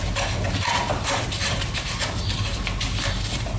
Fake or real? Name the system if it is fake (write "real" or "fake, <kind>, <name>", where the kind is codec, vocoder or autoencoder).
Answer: real